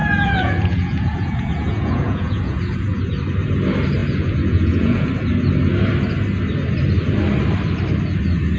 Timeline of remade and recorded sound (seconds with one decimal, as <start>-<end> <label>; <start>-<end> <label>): 0.0-3.0 remade; 3.0-4.0 recorded; 4.0-5.1 remade; 5.1-8.6 recorded